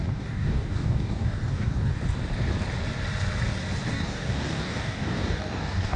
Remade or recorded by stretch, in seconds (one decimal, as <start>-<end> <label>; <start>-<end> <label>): 0.0-1.9 remade; 1.9-3.9 recorded; 3.9-6.0 remade